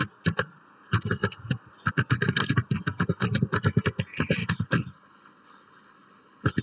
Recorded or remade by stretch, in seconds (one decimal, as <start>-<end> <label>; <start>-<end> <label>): 0.0-4.4 recorded; 4.4-6.6 remade